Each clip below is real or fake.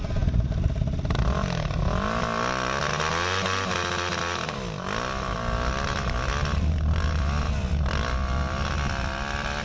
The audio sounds real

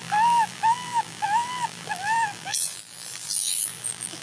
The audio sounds fake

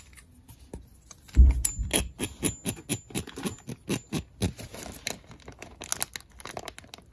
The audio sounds real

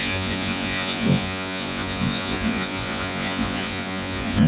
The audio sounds fake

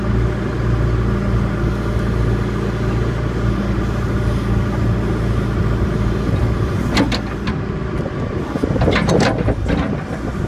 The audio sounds real